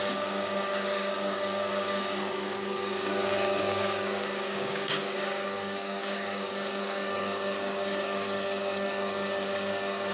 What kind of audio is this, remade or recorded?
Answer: remade